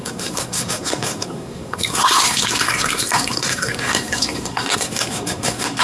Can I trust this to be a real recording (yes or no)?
no